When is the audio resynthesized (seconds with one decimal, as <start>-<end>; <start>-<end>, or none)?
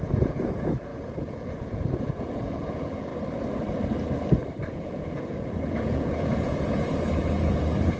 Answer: 0.0-3.1; 4.7-8.0